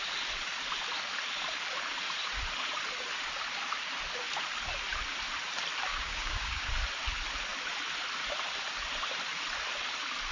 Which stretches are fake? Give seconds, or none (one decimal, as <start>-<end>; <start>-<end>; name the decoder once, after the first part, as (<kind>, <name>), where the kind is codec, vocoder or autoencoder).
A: 5.9-6.7 (codec, DAC)